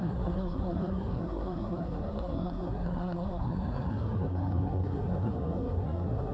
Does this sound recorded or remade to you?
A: remade